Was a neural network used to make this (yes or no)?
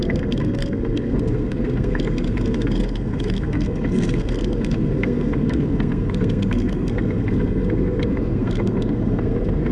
yes